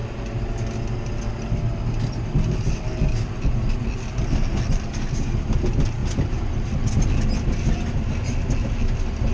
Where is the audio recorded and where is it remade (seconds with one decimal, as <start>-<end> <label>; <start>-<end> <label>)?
0.0-6.0 recorded; 6.0-6.9 remade; 6.9-9.3 recorded